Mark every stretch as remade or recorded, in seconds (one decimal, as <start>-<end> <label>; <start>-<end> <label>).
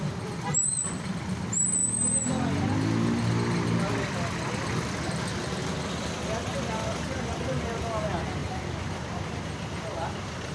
0.0-10.5 recorded